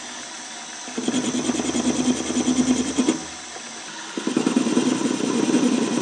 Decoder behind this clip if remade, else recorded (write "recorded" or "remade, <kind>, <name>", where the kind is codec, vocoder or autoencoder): recorded